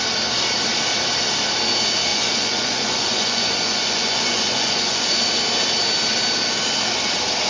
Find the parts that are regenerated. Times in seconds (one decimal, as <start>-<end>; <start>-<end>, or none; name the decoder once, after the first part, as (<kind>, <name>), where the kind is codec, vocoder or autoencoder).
2.1-5.1 (vocoder, Vocos)